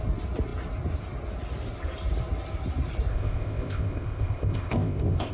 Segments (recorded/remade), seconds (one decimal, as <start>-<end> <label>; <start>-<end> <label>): 0.0-3.1 recorded; 3.1-5.3 remade